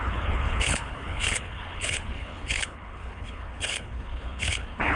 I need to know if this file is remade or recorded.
remade